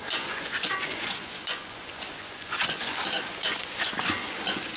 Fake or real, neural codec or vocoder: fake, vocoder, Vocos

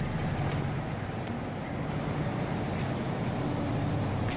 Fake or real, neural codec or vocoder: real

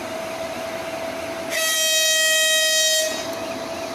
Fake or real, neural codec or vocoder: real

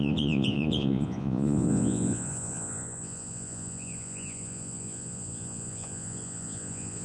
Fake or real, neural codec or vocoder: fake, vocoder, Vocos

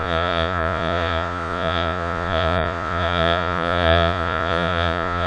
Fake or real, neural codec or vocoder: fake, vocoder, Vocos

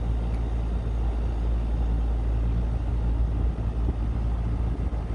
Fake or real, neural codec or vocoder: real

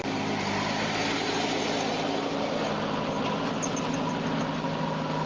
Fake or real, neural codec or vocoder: real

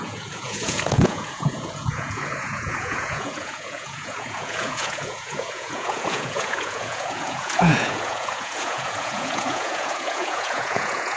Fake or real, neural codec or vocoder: fake, vocoder, Vocos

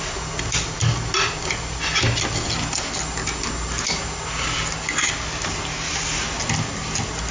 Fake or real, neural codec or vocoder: real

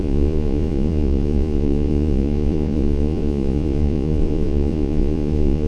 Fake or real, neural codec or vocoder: fake, vocoder, Vocos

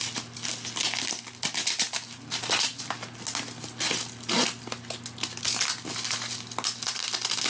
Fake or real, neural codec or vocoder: real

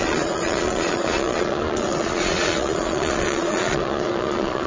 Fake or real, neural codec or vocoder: fake, vocoder, Vocos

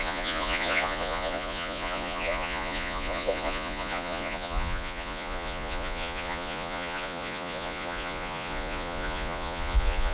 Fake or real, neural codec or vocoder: fake, vocoder, Vocos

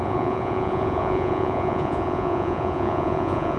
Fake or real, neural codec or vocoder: fake, vocoder, Vocos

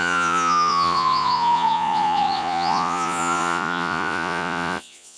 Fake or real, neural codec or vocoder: fake, vocoder, Vocos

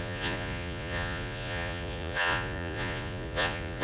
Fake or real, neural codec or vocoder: fake, vocoder, Vocos